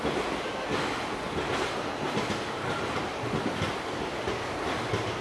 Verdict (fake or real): real